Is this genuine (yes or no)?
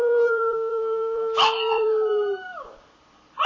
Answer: no